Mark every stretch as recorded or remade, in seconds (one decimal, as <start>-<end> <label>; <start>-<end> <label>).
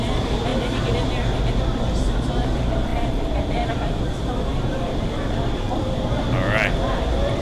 0.0-2.9 recorded; 2.9-4.0 remade; 4.0-4.5 recorded; 4.5-6.2 remade; 6.2-7.4 recorded